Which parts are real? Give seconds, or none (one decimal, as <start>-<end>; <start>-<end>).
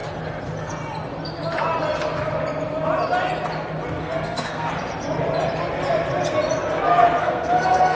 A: 0.0-4.0; 4.7-7.2